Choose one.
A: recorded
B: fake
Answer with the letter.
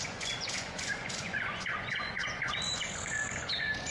B